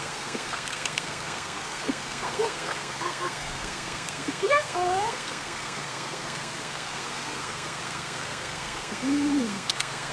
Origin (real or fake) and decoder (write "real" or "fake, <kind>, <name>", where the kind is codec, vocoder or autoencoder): fake, codec, SNAC